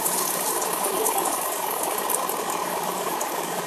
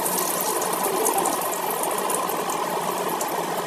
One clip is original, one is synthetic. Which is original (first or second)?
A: second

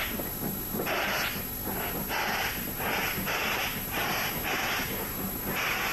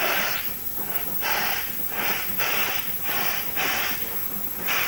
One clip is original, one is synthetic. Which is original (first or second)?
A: first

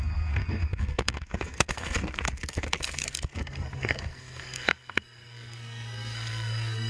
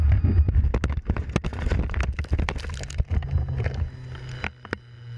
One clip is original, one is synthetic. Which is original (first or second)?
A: second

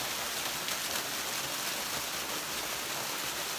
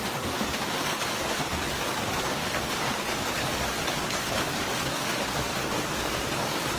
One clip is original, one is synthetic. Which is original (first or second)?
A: first